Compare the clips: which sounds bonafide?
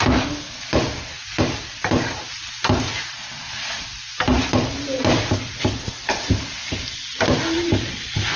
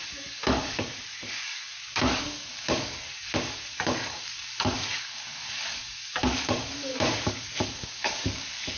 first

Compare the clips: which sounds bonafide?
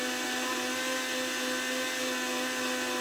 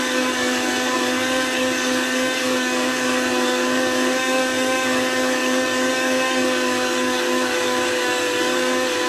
first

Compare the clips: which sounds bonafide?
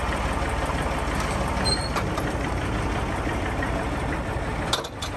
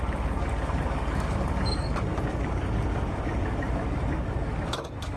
first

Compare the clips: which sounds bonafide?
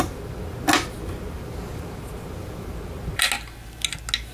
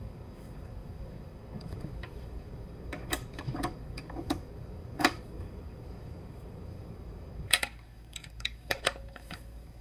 first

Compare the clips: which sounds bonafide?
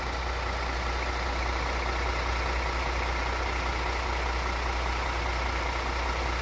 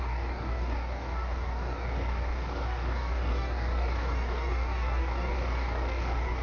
first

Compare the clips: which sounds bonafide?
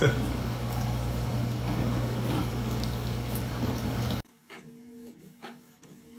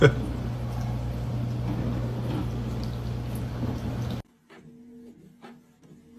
second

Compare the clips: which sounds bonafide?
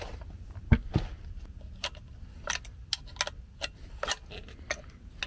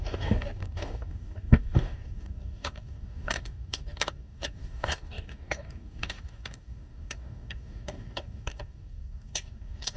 first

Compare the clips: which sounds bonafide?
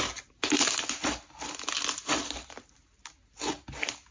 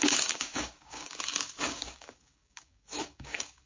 first